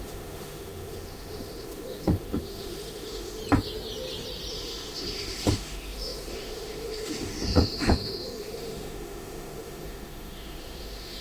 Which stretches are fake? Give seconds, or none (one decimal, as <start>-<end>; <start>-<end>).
0.0-3.4; 4.5-11.2